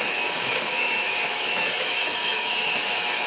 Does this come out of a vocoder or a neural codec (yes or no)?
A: yes